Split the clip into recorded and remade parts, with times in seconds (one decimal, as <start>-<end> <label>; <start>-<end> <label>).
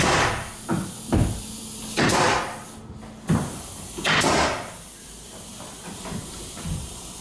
0.0-1.6 remade; 1.6-4.4 recorded; 4.4-7.2 remade